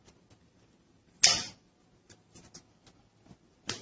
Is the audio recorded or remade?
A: recorded